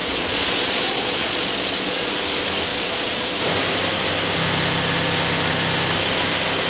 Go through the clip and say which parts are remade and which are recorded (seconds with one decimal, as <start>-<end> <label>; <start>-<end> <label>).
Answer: 0.0-2.1 remade; 2.1-2.7 recorded; 2.7-3.3 remade; 3.3-6.7 recorded